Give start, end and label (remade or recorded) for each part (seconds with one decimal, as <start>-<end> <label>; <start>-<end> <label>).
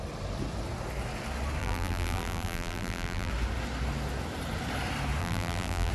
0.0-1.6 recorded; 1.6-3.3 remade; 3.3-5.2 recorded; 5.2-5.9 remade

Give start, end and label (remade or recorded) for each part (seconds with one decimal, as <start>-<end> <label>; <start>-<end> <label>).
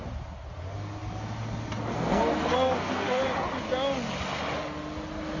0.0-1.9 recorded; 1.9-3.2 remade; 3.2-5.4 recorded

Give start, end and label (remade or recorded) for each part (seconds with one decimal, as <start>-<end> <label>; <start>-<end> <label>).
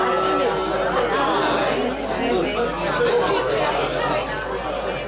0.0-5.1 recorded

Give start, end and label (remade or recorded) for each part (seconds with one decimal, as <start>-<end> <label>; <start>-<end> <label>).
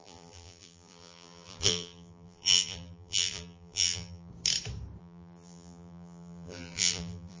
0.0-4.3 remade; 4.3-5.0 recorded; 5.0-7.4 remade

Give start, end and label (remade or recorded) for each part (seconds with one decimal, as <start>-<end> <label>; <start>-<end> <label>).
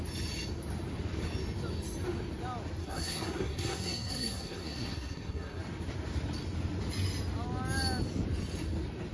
0.0-2.8 recorded; 2.8-5.6 remade; 5.6-9.1 recorded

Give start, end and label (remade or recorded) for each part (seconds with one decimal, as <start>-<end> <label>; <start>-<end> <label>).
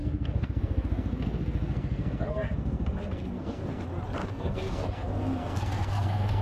0.0-3.8 remade; 3.8-4.2 recorded; 4.2-6.4 remade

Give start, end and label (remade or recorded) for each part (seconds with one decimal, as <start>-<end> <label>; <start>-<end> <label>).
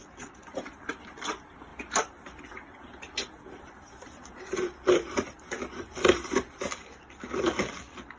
0.0-8.2 recorded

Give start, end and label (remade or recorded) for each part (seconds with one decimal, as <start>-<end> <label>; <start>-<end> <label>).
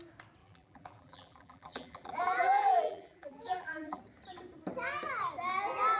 0.0-0.4 recorded; 0.4-4.0 remade; 4.0-6.0 recorded